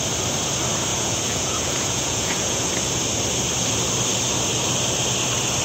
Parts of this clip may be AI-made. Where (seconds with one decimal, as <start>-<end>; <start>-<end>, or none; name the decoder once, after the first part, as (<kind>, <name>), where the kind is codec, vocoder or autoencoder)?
0.9-2.7 (vocoder, Vocos)